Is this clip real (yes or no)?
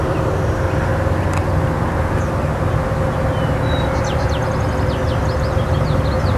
yes